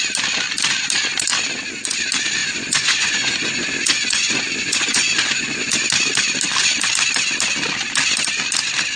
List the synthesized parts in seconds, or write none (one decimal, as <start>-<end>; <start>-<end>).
2.4-5.7